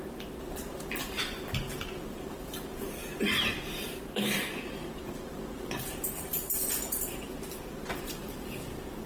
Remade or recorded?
remade